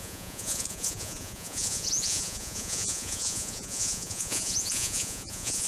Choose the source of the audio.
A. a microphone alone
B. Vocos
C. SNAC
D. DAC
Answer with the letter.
B